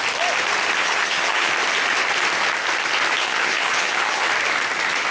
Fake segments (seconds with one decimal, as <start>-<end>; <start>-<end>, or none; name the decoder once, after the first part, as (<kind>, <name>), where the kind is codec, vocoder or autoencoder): 0.8-1.5 (vocoder, HiFi-GAN); 3.2-4.3